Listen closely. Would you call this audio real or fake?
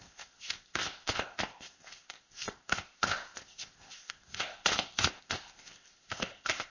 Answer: fake